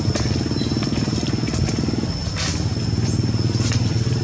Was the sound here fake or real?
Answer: real